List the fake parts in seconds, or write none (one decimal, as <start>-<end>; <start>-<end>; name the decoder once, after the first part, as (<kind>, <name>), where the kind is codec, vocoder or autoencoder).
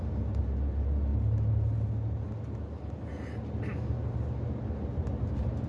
none